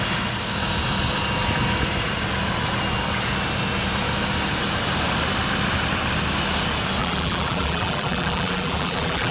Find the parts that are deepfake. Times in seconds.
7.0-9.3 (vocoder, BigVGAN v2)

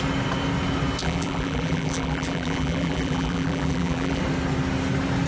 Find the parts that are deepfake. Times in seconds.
1.0-4.2 (vocoder, BigVGAN v2)

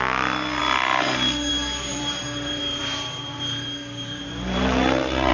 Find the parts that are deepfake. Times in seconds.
1.9-5.3 (vocoder, BigVGAN v2)